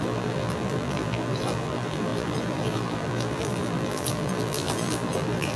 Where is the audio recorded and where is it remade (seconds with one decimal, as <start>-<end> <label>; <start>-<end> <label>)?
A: 0.0-5.6 remade